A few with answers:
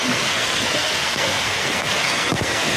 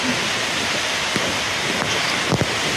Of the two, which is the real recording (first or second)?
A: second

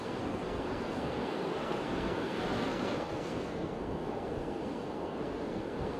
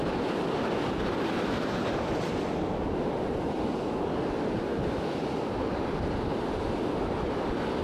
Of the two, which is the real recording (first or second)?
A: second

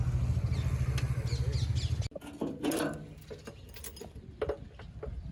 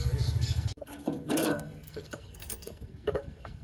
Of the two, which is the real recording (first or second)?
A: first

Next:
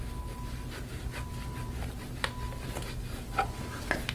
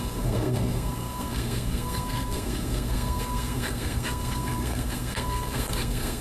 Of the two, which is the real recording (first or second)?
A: first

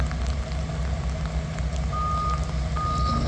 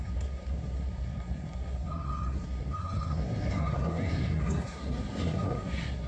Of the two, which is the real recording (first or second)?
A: first